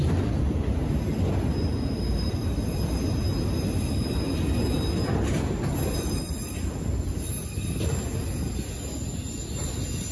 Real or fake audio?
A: real